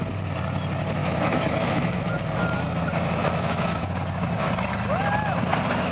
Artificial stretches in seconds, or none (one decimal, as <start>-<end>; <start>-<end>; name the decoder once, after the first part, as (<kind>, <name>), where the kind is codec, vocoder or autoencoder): 1.0-2.1 (autoencoder, DAC-VAE); 3.2-3.9